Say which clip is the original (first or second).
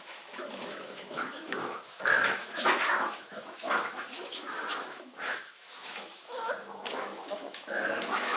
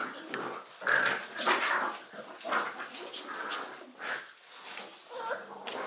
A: second